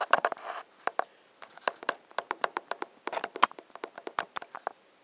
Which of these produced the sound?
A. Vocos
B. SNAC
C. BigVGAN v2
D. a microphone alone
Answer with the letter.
D